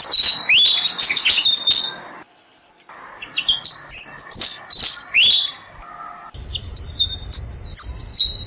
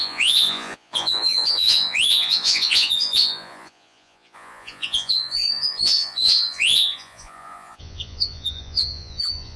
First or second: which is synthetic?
second